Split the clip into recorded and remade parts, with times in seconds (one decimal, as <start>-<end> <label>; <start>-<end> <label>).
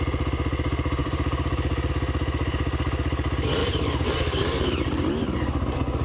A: 0.0-1.0 recorded; 1.0-1.9 remade; 1.9-3.6 recorded; 3.6-5.1 remade; 5.1-6.0 recorded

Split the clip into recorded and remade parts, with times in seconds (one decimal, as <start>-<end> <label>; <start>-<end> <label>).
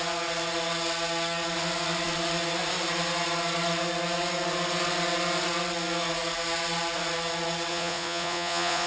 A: 0.0-7.7 recorded; 7.7-8.9 remade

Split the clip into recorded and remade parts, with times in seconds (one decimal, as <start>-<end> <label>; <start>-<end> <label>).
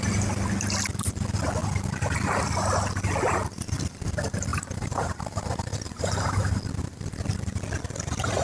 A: 0.0-4.5 recorded; 4.5-6.5 remade; 6.5-8.4 recorded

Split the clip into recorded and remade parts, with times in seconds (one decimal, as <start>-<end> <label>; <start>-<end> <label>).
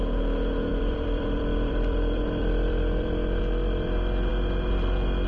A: 0.0-0.7 recorded; 0.7-3.4 remade; 3.4-5.3 recorded